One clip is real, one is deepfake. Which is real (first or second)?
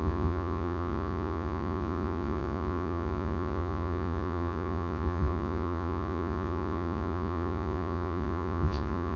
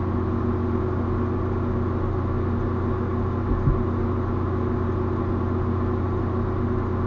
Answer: second